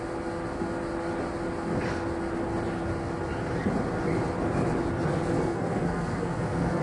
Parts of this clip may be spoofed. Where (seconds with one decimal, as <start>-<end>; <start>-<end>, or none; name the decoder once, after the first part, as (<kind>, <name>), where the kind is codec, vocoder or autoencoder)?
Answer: 5.4-6.8 (codec, SNAC)